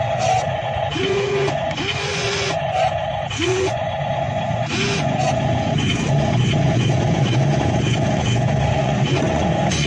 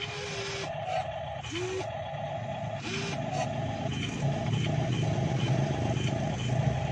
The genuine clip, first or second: second